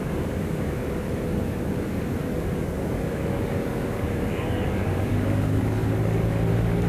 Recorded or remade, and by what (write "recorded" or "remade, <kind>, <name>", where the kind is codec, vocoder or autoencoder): remade, codec, DAC